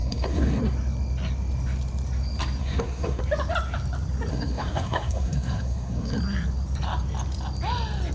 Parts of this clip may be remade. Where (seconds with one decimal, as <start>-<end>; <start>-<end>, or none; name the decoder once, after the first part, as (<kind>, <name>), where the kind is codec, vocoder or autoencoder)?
0.0-0.6 (codec, SNAC); 2.6-3.2; 4.3-6.2